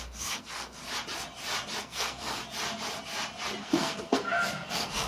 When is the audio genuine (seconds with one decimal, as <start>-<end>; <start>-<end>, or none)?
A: 0.8-1.8; 2.4-3.6